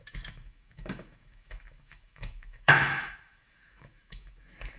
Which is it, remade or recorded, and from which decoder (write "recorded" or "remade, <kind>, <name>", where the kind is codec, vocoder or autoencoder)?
remade, autoencoder, DAC-VAE